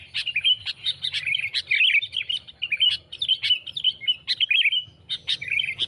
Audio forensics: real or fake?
real